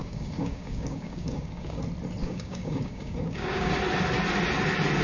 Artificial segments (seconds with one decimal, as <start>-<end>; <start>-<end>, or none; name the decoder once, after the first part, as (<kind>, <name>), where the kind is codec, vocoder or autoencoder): 0.0-1.8 (codec, DAC); 2.2-3.7